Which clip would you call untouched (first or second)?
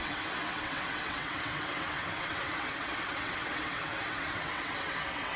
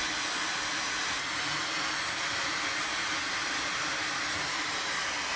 second